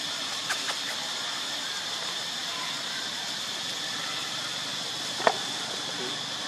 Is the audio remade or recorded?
remade